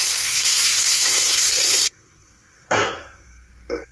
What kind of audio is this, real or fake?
fake